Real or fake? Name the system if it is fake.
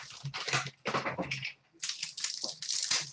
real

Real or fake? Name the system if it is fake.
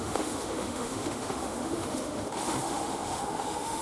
fake, autoencoder, DAC-VAE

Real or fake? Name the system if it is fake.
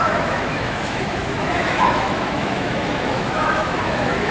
fake, autoencoder, DAC-VAE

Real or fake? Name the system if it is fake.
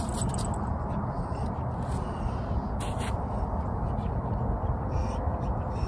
real